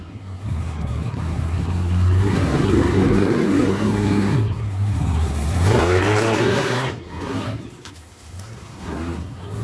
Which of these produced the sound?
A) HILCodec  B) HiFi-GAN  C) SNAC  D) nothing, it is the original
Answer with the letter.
C